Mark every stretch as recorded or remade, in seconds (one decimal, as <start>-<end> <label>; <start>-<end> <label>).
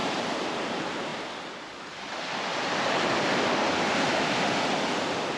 0.0-0.7 remade; 0.7-5.4 recorded